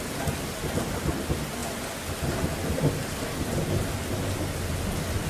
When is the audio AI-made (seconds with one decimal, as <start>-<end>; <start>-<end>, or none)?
none